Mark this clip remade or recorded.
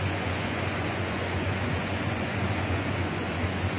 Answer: remade